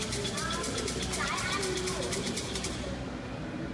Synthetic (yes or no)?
no